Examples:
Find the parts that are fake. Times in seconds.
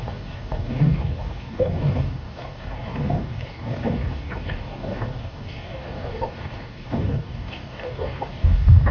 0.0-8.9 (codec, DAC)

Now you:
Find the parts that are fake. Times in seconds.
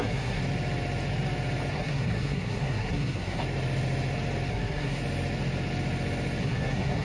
0.0-0.4 (codec, SNAC); 1.7-3.4; 4.5-5.0; 6.4-7.0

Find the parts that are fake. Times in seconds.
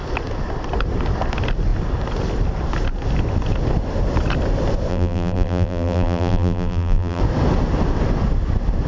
4.9-7.2 (vocoder, BigVGAN v2)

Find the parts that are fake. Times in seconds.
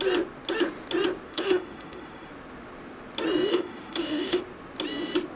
1.3-2.3 (autoencoder, DAC-VAE); 3.5-4.4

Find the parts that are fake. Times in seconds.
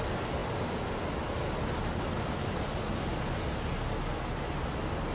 none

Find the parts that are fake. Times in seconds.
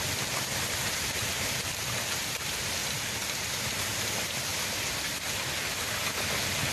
0.0-4.5 (vocoder, BigVGAN v2)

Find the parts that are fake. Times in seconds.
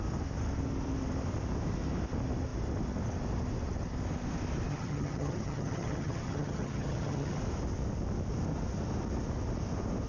4.7-7.4 (vocoder, HiFi-GAN)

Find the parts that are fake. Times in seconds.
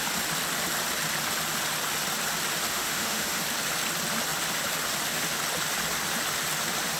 2.7-3.4 (autoencoder, DAC-VAE)